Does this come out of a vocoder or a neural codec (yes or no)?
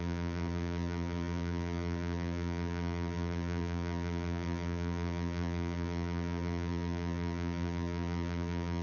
yes